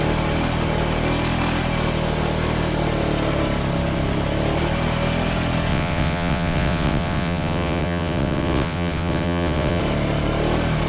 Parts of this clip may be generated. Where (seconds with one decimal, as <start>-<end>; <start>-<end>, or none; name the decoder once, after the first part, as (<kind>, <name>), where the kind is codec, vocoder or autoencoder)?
5.7-9.8 (vocoder, WaveNeXt)